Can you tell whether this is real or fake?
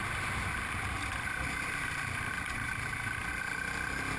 real